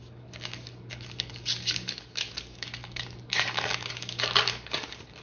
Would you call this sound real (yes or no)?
no